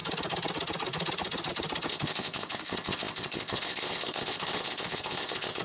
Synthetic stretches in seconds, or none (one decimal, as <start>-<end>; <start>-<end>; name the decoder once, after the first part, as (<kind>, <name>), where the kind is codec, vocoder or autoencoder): 1.9-5.6 (codec, ZipCodec)